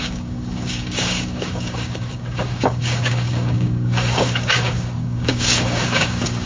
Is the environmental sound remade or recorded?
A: remade